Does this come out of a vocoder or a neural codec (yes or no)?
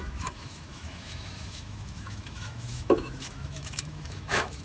yes